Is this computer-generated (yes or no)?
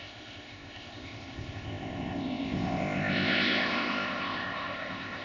yes